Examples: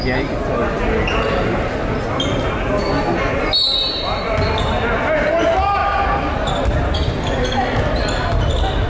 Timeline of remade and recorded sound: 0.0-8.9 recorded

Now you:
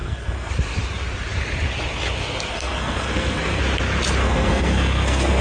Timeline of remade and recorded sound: 0.0-0.5 remade; 0.5-2.5 recorded; 2.5-3.6 remade; 3.6-4.2 recorded; 4.2-5.4 remade

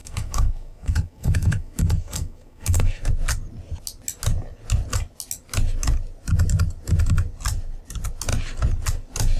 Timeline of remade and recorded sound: 0.0-3.1 remade; 3.1-9.4 recorded